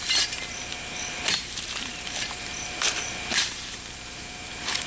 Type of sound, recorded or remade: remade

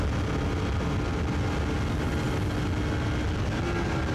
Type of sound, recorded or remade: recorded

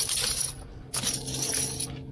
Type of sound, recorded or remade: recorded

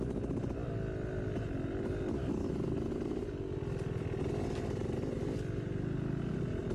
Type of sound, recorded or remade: recorded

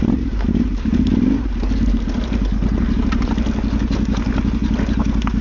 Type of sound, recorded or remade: recorded